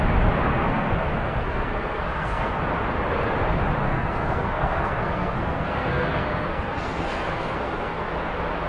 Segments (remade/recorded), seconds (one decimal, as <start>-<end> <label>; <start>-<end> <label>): 0.0-0.5 recorded; 0.5-2.6 remade; 2.6-3.8 recorded; 3.8-8.1 remade; 8.1-8.7 recorded